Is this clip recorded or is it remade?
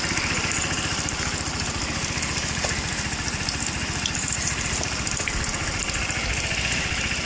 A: recorded